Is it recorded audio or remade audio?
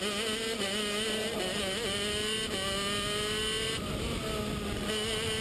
recorded